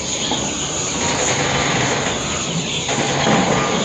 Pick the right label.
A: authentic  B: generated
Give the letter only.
A